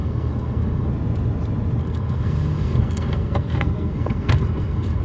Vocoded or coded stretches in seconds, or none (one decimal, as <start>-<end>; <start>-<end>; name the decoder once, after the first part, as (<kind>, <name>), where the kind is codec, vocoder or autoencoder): 0.0-0.9 (codec, SNAC); 1.8-5.0